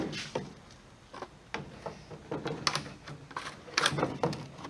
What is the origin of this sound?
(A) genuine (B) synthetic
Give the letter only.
A